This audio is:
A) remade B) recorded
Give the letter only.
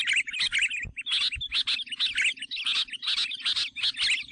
B